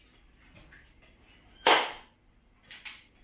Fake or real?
real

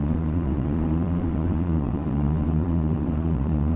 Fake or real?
fake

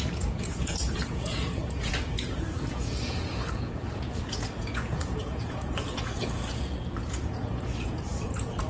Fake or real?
fake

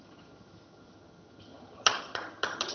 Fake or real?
fake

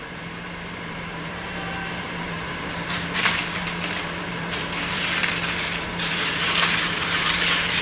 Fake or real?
fake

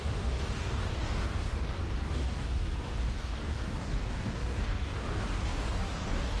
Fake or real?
fake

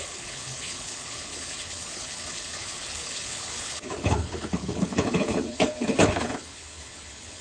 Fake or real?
fake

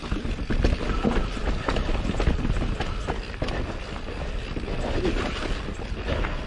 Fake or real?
real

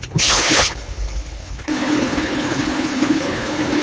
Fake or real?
fake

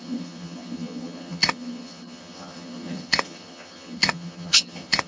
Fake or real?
fake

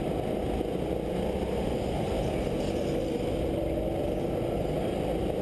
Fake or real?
real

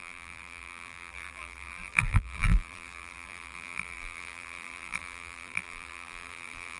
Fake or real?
fake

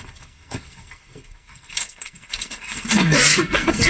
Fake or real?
fake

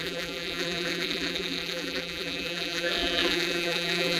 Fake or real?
fake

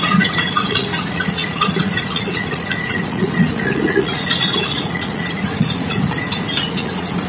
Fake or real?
fake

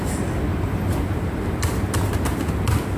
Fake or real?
real